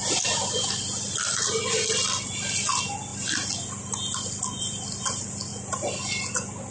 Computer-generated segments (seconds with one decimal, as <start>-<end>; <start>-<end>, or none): none